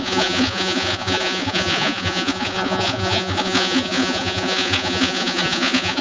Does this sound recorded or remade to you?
remade